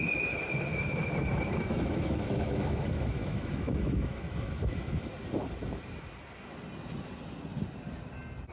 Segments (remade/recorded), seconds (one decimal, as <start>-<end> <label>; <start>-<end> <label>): 0.0-0.7 recorded; 0.7-5.1 remade; 5.1-8.5 recorded